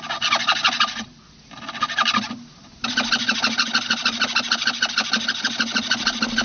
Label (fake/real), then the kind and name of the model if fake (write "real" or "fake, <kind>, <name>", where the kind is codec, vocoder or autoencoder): real